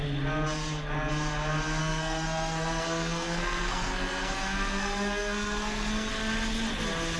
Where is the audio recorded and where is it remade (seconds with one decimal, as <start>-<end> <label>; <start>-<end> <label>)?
0.0-1.8 recorded; 1.8-6.1 remade; 6.1-7.2 recorded